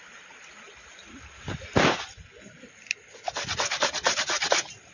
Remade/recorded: recorded